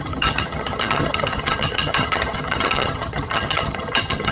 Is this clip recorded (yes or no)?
no